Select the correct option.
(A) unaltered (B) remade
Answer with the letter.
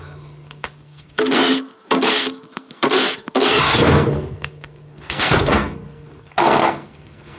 B